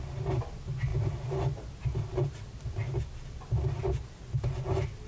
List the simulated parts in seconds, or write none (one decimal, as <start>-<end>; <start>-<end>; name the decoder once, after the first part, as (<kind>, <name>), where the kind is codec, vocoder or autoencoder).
none